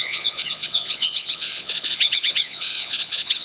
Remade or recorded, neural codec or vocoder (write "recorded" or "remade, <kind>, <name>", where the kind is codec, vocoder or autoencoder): remade, vocoder, Vocos